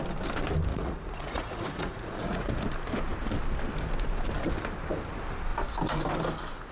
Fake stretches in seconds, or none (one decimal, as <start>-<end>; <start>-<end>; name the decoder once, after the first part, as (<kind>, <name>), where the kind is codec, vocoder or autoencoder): 0.7-2.6 (vocoder, Vocos)